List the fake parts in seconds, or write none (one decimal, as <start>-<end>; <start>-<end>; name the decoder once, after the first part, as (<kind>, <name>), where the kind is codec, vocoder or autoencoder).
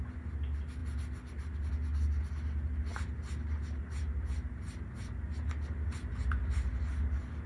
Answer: none